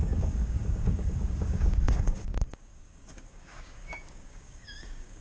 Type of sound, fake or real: fake